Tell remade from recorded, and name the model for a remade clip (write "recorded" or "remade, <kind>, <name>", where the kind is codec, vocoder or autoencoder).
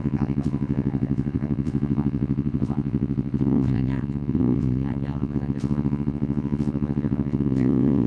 remade, vocoder, WaveNeXt